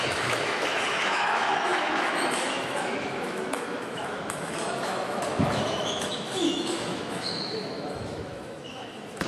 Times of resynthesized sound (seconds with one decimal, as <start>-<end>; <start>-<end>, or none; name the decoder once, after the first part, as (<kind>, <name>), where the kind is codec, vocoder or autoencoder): 0.0-9.3 (autoencoder, DAC-VAE)